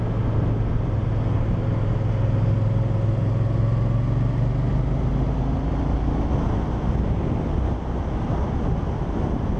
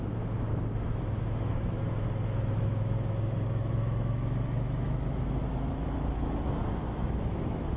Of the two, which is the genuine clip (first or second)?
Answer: first